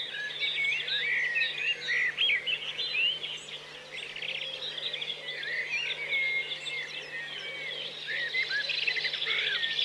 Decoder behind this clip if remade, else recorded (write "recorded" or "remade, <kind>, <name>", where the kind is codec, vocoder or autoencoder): recorded